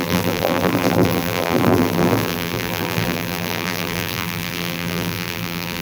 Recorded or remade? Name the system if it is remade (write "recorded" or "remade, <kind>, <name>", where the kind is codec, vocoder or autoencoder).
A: remade, vocoder, BigVGAN v2